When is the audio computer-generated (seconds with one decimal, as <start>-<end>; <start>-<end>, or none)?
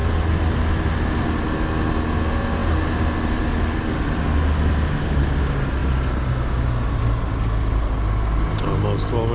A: 0.0-1.2